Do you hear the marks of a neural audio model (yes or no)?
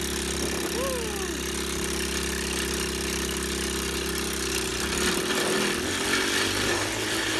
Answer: no